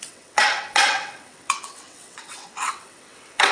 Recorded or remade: remade